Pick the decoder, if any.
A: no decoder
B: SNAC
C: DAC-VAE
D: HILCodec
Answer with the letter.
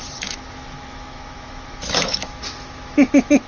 C